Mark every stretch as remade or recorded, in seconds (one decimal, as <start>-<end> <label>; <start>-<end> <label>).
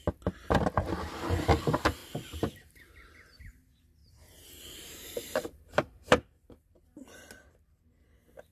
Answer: 0.0-2.0 recorded; 2.0-3.1 remade; 3.1-4.0 recorded; 4.0-7.8 remade; 7.8-8.5 recorded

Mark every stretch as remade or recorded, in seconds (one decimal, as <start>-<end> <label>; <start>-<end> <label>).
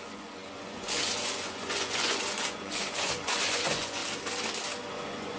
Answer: 0.0-4.0 remade; 4.0-4.9 recorded; 4.9-5.4 remade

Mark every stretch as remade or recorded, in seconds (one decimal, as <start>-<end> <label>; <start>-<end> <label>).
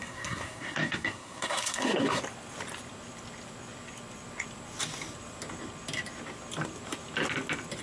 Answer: 0.0-2.2 remade; 2.2-7.8 recorded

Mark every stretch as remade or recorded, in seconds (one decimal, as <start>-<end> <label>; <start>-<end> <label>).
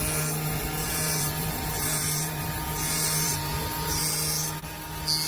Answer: 0.0-0.8 recorded; 0.8-4.0 remade; 4.0-5.3 recorded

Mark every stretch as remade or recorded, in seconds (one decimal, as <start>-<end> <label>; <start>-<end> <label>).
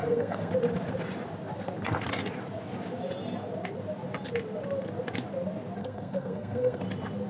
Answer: 0.0-0.5 remade; 0.5-5.8 recorded; 5.8-6.8 remade; 6.8-7.3 recorded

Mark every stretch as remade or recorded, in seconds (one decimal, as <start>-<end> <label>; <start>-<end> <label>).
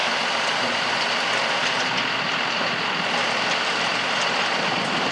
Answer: 0.0-5.1 recorded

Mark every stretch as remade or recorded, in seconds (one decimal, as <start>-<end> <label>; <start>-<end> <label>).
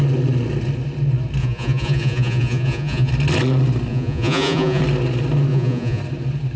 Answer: 0.0-1.4 recorded; 1.4-3.1 remade; 3.1-3.9 recorded; 3.9-4.8 remade; 4.8-5.5 recorded; 5.5-6.0 remade; 6.0-6.6 recorded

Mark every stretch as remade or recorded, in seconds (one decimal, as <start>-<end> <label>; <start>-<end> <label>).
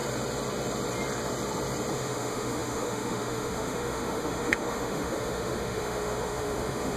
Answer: 0.0-1.9 recorded; 1.9-7.0 remade